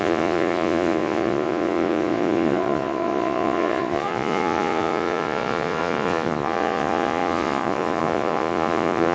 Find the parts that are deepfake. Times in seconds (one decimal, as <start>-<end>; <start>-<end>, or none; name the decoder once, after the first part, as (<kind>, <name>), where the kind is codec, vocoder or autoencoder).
0.0-9.1 (vocoder, Vocos)